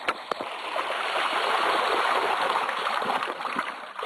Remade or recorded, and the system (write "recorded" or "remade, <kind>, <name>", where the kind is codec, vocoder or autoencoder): remade, vocoder, BigVGAN v2